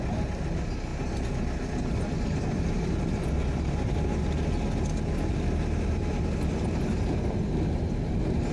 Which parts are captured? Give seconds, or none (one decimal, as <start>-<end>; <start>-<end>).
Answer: 0.0-8.5